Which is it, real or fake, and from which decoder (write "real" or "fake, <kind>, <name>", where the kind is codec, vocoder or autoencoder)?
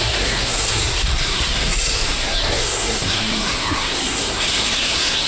fake, codec, SNAC